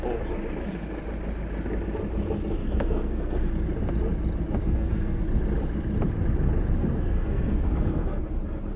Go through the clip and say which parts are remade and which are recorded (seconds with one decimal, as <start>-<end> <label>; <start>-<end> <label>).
0.0-2.6 recorded; 2.6-3.5 remade; 3.5-4.6 recorded; 4.6-5.2 remade; 5.2-6.8 recorded; 6.8-8.2 remade; 8.2-8.8 recorded